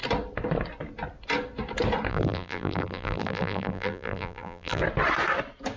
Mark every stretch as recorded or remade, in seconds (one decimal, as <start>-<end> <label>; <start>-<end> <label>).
0.0-2.1 recorded; 2.1-4.8 remade; 4.8-5.8 recorded